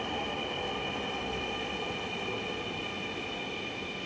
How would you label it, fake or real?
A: real